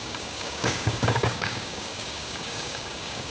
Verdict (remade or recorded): remade